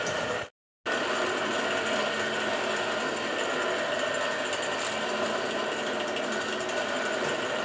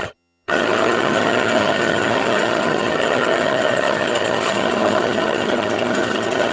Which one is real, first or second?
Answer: first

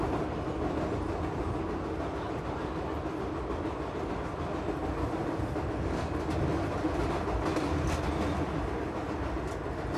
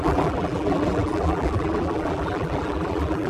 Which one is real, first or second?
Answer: first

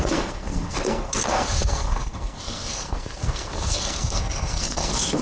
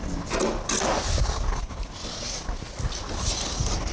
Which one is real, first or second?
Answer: second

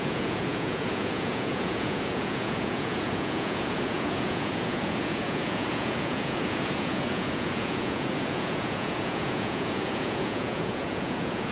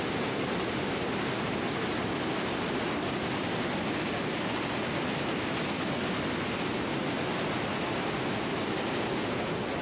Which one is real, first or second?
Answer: second